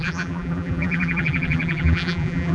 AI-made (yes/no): yes